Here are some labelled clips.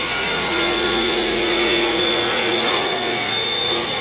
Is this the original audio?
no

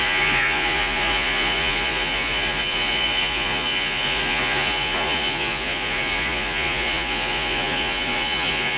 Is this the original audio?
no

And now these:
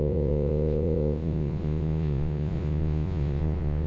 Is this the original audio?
no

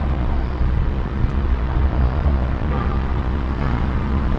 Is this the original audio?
no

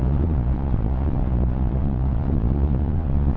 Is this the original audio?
no